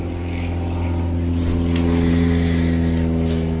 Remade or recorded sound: recorded